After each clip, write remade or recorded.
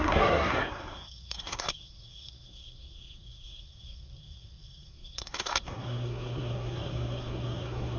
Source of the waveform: remade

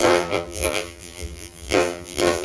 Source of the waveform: remade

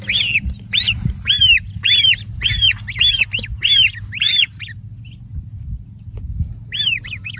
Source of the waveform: recorded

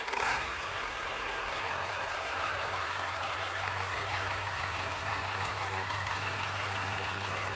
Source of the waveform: remade